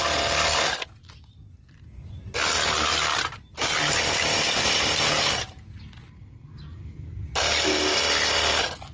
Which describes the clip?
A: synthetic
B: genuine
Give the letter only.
B